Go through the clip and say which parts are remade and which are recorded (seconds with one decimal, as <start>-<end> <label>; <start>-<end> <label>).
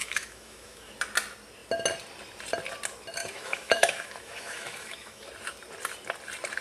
0.0-0.9 remade; 0.9-3.2 recorded; 3.2-5.3 remade; 5.3-6.6 recorded